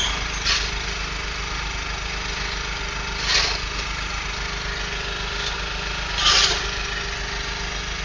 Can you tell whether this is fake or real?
real